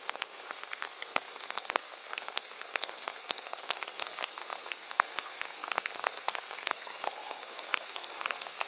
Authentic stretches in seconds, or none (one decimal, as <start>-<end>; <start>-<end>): none